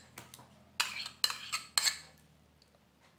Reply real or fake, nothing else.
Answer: real